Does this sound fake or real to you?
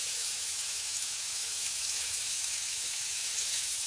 fake